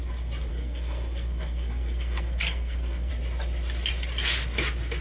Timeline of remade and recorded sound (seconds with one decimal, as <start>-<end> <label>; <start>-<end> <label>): 0.0-0.5 recorded; 0.5-3.1 remade; 3.1-5.0 recorded